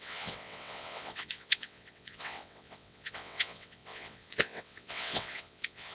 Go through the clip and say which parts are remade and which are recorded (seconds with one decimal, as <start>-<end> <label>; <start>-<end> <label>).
0.0-5.9 remade